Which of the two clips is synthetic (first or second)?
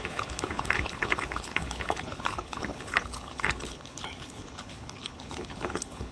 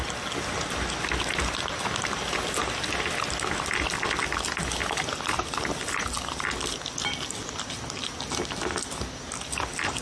first